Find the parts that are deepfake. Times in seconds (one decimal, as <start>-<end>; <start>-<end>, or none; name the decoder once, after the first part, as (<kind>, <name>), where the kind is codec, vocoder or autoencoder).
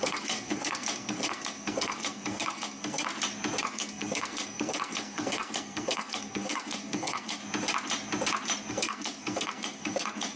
0.0-3.1 (codec, SNAC); 3.6-7.4; 8.7-10.4